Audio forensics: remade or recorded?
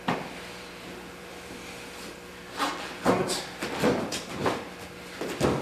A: recorded